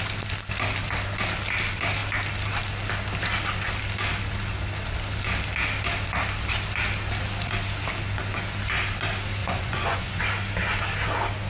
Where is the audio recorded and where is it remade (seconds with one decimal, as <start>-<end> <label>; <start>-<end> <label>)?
0.0-9.4 recorded; 9.4-10.2 remade; 10.2-11.5 recorded